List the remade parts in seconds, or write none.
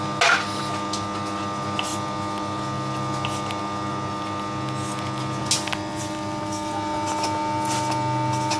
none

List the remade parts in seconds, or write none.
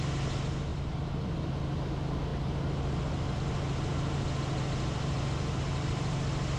0.7-1.5 (vocoder, BigVGAN v2)